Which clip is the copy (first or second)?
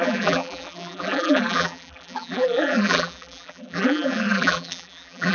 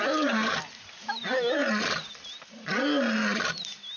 first